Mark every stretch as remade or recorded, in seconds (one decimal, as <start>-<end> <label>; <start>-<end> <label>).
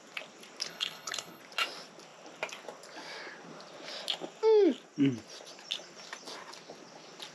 0.0-0.7 recorded; 0.7-1.4 remade; 1.4-7.3 recorded